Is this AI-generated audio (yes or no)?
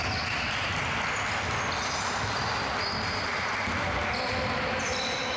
no